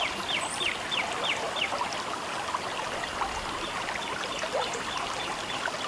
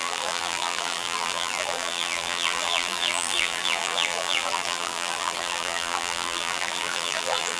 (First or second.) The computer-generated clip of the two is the second